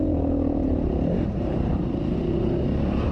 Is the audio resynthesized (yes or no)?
yes